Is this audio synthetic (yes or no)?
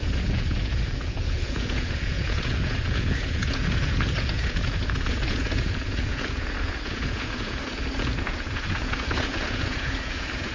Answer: yes